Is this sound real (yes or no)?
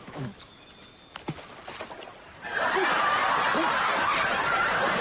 yes